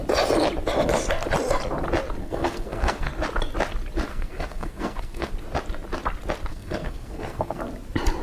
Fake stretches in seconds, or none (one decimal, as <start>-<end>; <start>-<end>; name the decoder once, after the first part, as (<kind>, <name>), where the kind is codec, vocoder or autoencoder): 2.2-3.1 (codec, SNAC); 4.1-5.3; 6.5-7.6